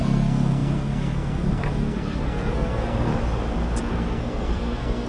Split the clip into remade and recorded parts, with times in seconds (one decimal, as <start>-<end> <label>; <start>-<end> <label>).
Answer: 0.0-3.1 remade; 3.1-3.8 recorded; 3.8-5.1 remade